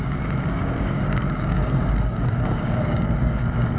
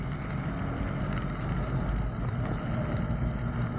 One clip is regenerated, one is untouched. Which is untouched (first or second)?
second